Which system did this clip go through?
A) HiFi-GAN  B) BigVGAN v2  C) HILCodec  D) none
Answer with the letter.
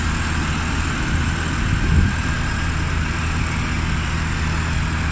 D